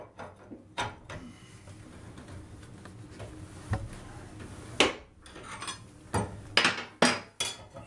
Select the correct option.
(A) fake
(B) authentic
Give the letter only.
B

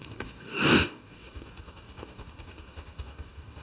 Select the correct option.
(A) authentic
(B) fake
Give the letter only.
B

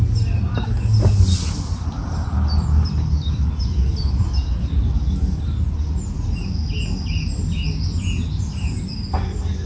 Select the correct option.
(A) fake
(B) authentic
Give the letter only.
B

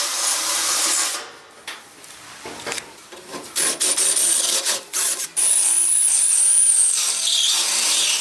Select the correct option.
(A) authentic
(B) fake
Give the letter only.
B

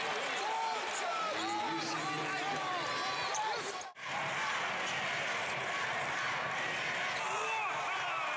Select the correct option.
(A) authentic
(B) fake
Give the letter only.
A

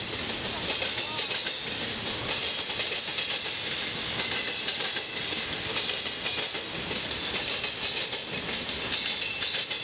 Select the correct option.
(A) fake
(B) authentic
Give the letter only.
B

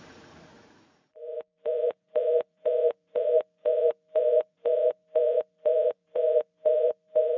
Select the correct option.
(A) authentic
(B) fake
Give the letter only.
B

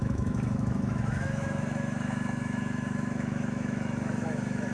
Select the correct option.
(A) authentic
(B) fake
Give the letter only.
B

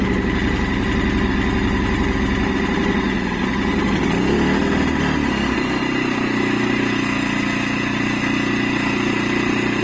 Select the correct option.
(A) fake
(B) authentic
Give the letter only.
B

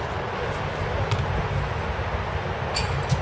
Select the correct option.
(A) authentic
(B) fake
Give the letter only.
A